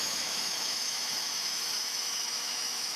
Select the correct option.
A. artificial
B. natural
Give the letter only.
A